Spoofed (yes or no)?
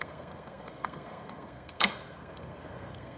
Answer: yes